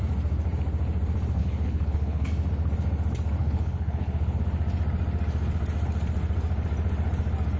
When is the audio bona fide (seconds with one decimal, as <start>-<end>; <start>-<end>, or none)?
0.0-1.4; 2.3-3.4; 4.4-7.6